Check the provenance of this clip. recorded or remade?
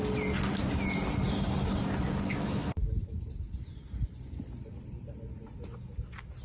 recorded